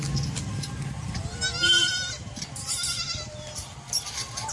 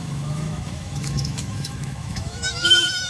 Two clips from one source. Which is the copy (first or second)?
second